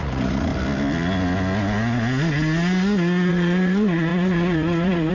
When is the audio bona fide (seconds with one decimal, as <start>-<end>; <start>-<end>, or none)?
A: 0.5-3.3